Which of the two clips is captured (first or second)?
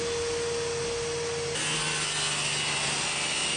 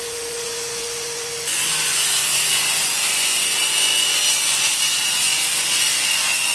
first